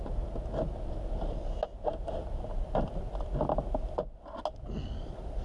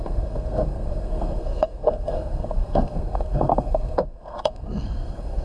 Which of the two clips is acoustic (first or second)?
first